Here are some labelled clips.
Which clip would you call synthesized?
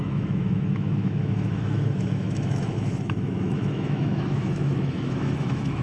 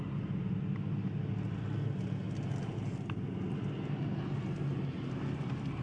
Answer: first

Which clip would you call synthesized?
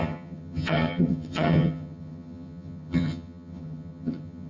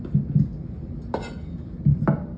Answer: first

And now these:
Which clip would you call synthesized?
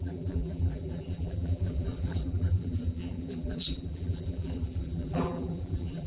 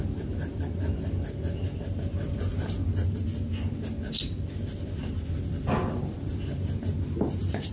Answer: first